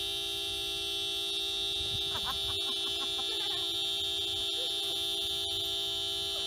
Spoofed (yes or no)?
no